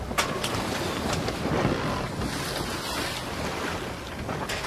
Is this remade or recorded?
recorded